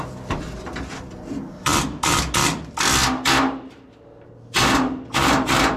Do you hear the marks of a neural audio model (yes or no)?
no